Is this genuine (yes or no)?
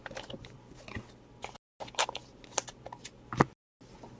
yes